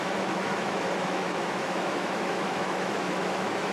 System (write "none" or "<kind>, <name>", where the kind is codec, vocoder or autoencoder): autoencoder, DAC-VAE